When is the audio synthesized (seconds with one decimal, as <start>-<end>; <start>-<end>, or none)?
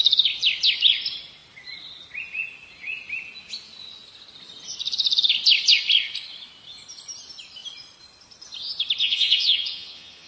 9.0-10.3